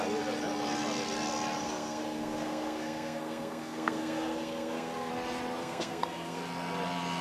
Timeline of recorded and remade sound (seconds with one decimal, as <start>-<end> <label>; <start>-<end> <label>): 0.0-1.6 recorded; 1.6-5.1 remade; 5.1-5.6 recorded; 5.6-6.4 remade; 6.4-7.2 recorded